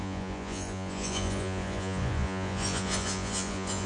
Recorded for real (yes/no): no